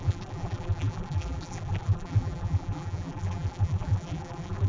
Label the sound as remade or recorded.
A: remade